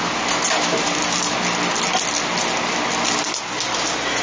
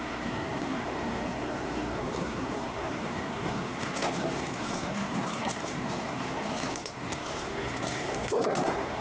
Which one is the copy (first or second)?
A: second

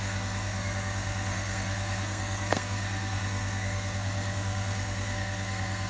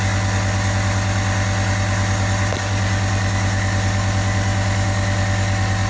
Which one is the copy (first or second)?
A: first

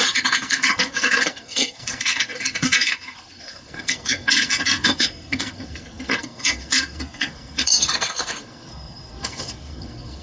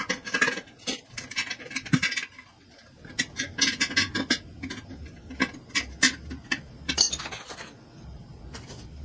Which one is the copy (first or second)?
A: first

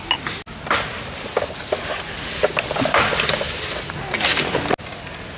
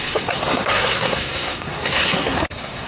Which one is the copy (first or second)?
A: second